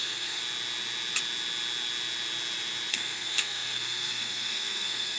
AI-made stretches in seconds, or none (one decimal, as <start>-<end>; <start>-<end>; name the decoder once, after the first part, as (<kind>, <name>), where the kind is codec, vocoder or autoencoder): 0.0-0.4 (codec, SNAC); 2.9-5.2